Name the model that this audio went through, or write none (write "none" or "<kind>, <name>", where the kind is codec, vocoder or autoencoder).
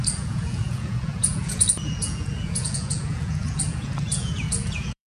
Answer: vocoder, Vocos